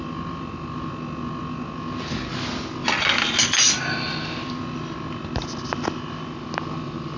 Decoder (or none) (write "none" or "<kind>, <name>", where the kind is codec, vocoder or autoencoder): none